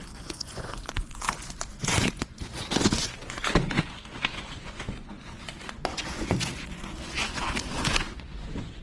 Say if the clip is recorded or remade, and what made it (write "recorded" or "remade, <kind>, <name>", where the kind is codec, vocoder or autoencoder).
remade, vocoder, Vocos